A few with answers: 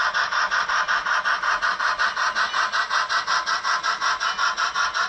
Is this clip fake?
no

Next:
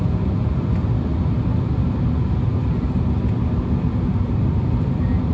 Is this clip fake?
no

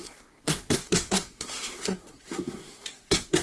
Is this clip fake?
yes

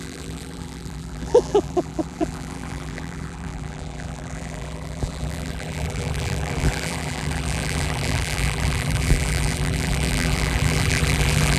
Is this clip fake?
yes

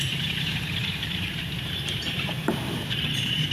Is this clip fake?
yes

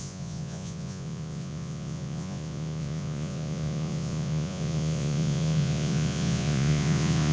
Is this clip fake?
yes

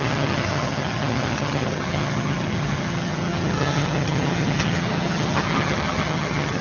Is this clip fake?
yes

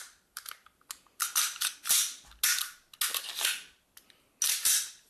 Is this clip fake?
no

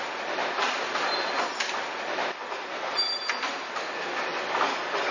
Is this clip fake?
no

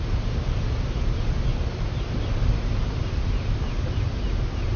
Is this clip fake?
no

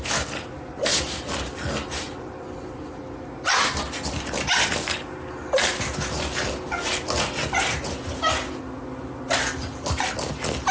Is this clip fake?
no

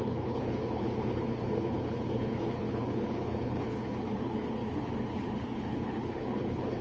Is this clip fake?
yes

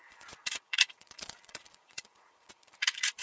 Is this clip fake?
yes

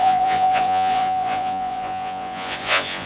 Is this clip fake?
yes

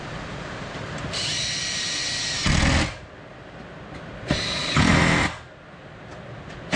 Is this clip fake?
no